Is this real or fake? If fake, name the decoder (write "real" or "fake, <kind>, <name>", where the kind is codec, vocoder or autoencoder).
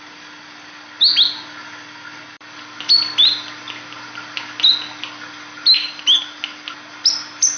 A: real